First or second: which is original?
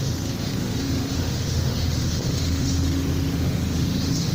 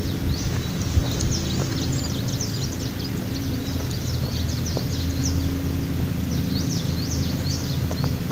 second